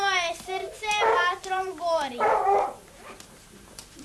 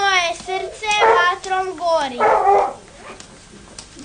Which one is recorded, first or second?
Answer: second